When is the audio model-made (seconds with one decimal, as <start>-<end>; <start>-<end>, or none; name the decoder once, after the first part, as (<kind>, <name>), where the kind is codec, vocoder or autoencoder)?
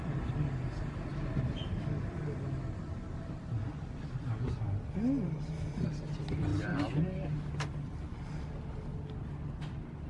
none